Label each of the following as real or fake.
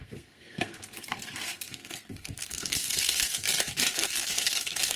fake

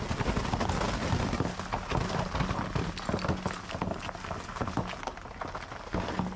real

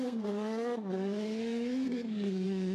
fake